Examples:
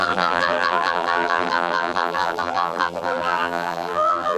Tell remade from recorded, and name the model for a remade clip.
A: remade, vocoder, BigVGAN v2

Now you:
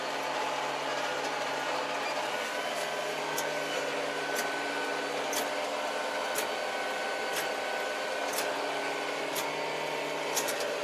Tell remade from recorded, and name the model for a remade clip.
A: recorded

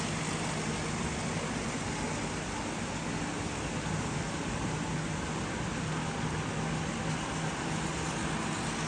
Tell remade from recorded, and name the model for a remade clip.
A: recorded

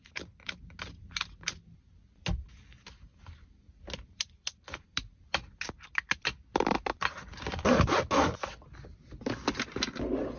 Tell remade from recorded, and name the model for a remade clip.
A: recorded